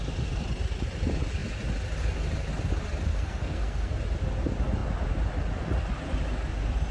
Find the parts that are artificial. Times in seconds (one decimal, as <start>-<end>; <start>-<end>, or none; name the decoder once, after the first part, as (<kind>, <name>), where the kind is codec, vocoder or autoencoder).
3.1-3.9 (codec, SNAC)